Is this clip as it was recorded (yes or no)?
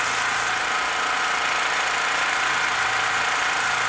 yes